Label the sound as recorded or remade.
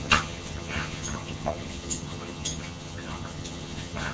remade